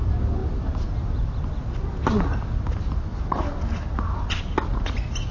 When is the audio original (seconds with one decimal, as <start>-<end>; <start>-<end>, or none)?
0.0-5.3